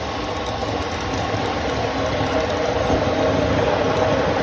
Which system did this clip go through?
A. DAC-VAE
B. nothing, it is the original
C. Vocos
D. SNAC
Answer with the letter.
B